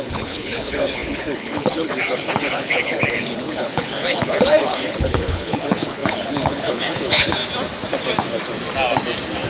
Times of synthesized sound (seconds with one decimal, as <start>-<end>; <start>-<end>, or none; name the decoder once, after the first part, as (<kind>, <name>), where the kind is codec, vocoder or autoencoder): 0.0-7.4 (codec, HILCodec)